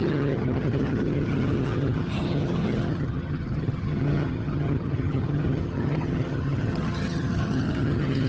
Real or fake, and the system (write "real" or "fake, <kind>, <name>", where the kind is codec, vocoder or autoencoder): fake, vocoder, HiFi-GAN